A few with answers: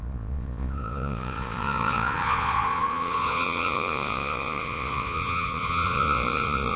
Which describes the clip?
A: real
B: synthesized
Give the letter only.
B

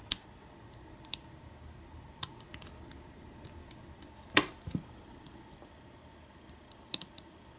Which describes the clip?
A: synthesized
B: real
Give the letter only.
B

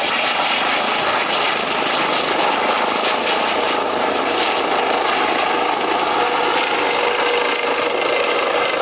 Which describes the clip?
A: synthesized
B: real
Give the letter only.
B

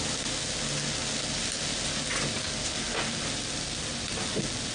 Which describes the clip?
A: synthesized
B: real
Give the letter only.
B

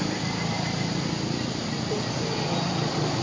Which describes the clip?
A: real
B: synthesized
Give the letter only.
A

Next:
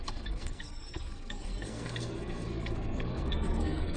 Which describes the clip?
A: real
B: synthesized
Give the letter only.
B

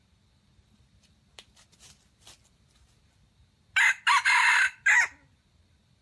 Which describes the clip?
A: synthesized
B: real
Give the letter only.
B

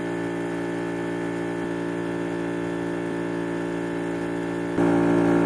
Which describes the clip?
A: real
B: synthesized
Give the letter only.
A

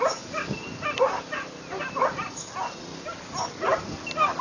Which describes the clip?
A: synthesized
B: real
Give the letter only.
B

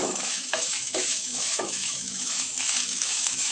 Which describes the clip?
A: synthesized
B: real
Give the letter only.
A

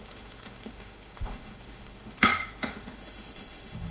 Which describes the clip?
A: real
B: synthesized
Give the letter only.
B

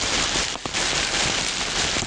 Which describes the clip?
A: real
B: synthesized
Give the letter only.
A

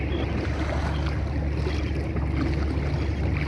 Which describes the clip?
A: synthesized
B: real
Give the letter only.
B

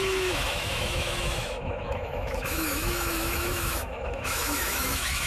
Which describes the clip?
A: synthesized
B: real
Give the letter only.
A